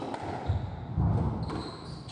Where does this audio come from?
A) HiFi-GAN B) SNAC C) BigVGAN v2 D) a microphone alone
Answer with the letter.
D